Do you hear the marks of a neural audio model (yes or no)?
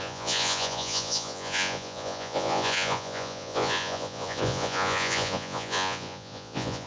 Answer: yes